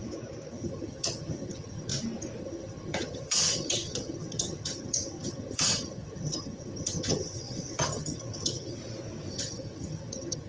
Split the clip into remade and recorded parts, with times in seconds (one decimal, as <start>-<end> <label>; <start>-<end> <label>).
0.0-0.5 recorded; 0.5-1.9 remade; 1.9-2.4 recorded; 2.4-8.8 remade; 8.8-9.3 recorded; 9.3-10.5 remade

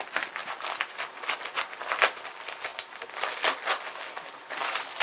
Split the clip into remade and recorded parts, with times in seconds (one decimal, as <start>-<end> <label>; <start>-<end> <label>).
0.0-5.0 recorded